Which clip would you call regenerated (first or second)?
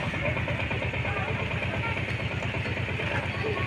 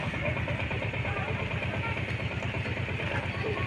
second